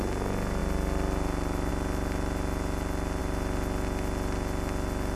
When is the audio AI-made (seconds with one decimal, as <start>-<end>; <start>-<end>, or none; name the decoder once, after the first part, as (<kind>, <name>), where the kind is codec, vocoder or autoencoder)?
none